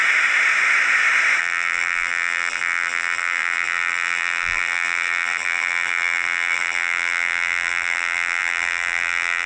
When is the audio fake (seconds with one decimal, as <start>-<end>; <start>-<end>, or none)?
1.4-9.5